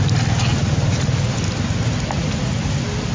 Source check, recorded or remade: recorded